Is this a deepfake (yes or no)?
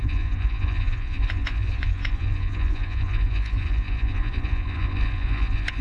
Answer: yes